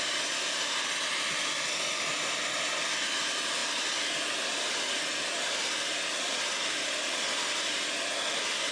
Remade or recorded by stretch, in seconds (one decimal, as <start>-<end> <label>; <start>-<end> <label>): 0.0-8.7 recorded